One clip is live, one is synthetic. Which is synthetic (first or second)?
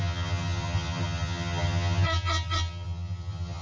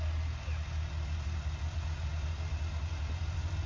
first